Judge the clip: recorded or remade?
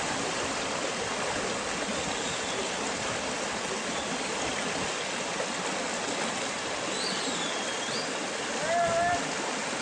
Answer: recorded